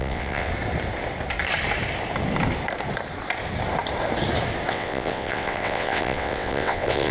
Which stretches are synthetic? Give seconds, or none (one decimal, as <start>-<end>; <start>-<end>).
0.0-0.5; 4.7-7.1